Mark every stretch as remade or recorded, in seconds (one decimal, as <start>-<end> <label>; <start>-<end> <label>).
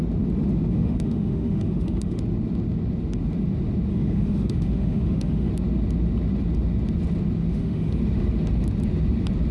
0.0-0.7 recorded; 0.7-2.2 remade; 2.2-3.9 recorded; 3.9-5.5 remade; 5.5-7.5 recorded; 7.5-8.0 remade; 8.0-9.5 recorded